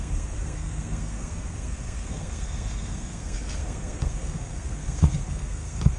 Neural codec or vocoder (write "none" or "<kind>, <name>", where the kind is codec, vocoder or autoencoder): codec, SNAC